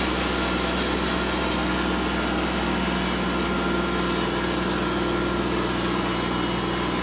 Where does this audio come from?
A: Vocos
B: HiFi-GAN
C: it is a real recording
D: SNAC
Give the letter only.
C